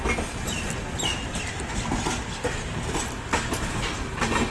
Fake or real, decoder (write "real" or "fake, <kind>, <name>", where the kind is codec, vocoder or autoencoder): real